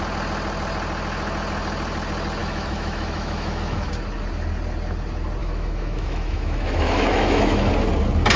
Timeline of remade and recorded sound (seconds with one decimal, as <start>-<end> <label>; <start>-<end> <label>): 0.0-2.4 recorded; 2.4-3.9 remade; 3.9-5.4 recorded; 5.4-7.7 remade; 7.7-8.4 recorded